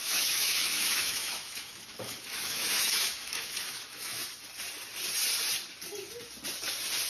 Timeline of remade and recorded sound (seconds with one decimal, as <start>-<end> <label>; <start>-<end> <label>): 0.0-4.2 remade; 4.2-7.1 recorded